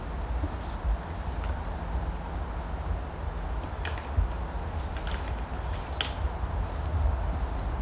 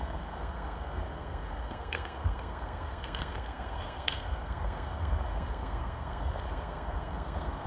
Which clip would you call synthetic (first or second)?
second